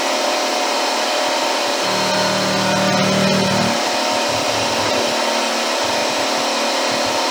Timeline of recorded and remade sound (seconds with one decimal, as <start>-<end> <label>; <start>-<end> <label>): 0.0-7.3 recorded